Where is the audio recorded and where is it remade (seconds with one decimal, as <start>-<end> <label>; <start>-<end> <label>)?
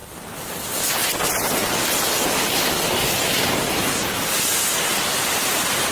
0.0-4.9 recorded; 4.9-5.9 remade